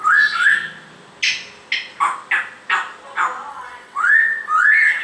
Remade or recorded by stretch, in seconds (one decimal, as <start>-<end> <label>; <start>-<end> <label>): 0.0-0.5 remade; 0.5-3.5 recorded; 3.5-5.0 remade